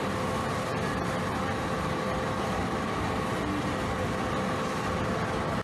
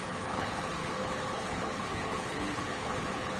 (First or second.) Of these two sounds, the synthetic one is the second